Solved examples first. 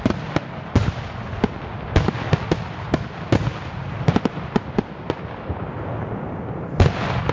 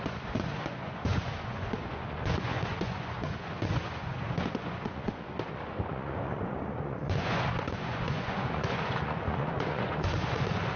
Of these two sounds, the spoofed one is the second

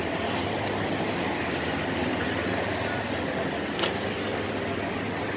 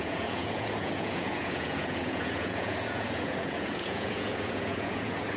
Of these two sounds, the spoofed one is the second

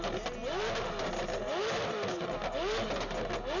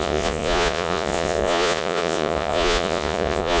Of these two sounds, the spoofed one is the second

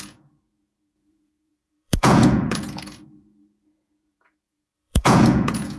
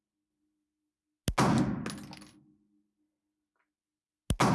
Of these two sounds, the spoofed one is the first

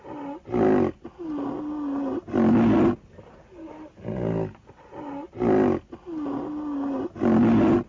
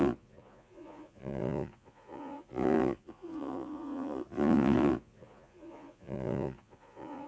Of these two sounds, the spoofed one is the second